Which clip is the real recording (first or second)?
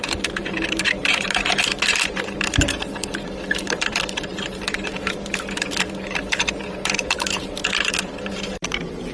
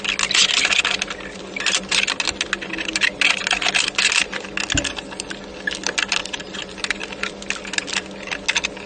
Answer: second